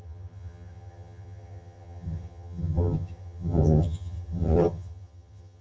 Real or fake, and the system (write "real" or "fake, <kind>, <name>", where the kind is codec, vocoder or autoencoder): fake, vocoder, HiFi-GAN